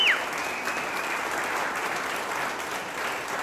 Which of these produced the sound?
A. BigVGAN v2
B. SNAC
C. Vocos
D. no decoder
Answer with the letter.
D